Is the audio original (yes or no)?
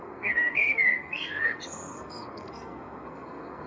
no